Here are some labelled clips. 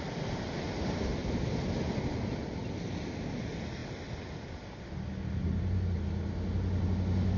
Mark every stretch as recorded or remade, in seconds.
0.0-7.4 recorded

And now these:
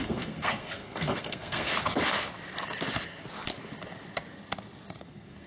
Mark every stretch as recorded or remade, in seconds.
0.0-1.7 remade; 1.7-5.0 recorded; 5.0-5.5 remade

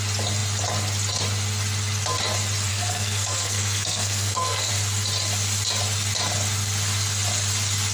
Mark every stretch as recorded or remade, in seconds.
0.0-2.7 recorded; 2.7-4.7 remade; 4.7-7.9 recorded

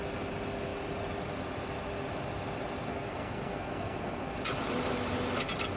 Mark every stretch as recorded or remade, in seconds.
0.0-2.9 recorded; 2.9-4.3 remade; 4.3-5.8 recorded

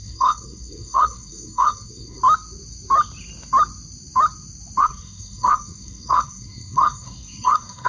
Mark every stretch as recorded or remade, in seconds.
0.0-2.2 remade; 2.2-4.8 recorded; 4.8-7.9 remade